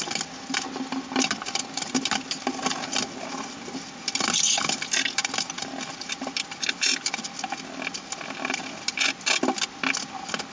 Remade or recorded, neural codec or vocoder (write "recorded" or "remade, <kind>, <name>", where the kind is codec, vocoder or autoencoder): recorded